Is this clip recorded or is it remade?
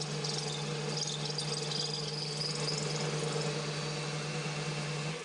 recorded